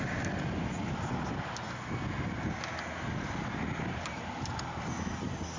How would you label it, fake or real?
real